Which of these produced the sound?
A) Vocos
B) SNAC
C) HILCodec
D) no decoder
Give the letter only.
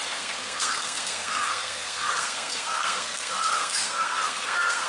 B